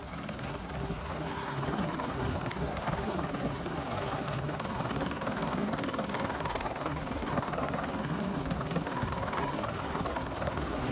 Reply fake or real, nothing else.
fake